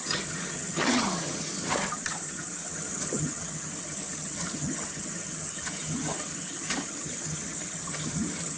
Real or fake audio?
fake